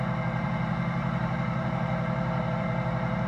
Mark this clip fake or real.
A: fake